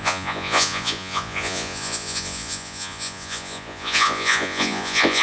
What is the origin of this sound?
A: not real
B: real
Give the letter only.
A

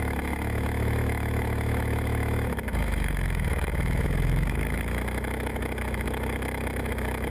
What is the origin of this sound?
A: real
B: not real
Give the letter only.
B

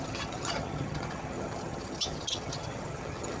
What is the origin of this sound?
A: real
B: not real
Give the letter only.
B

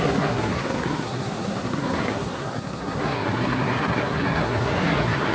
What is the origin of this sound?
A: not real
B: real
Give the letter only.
A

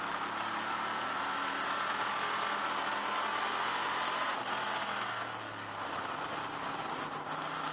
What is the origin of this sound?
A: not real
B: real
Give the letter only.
B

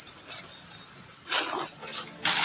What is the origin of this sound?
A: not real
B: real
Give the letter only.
B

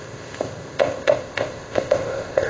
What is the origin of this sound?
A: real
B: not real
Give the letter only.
B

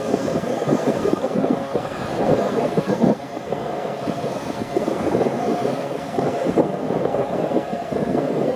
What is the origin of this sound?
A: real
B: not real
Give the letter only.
B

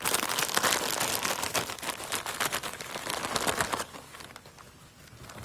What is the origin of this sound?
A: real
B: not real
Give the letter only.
A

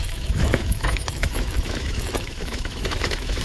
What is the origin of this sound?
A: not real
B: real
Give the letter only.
A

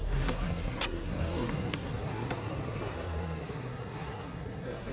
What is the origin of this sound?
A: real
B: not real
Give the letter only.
B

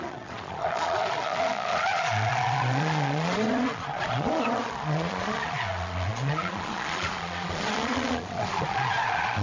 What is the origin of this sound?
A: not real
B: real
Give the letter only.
A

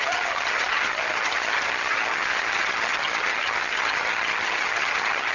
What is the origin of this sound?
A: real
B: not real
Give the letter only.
B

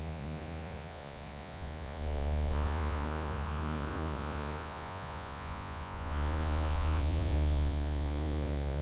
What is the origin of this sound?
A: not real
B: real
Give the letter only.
A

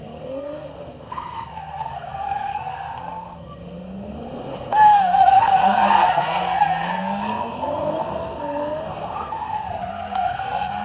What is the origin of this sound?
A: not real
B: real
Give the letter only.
A